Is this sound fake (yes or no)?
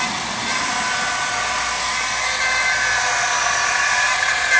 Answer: no